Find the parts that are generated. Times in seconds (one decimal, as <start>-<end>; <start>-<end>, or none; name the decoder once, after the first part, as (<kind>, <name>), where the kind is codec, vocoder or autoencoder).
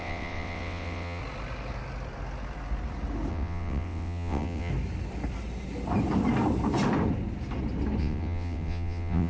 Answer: 0.0-1.2 (vocoder, WaveNeXt); 3.3-4.7; 8.0-9.3